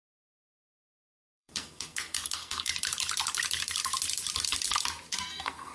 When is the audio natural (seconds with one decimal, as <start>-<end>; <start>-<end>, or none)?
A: 2.7-5.1

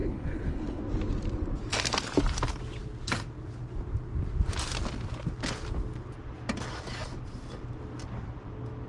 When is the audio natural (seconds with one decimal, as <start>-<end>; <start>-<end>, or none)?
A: 0.8-8.9

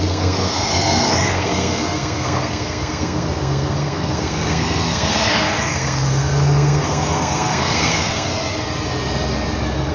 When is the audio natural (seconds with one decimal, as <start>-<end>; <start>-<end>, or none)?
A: 8.3-9.9

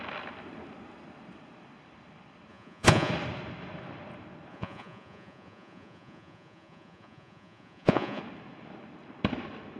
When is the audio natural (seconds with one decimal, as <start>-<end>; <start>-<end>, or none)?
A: 0.0-2.5; 3.1-4.5; 8.2-9.8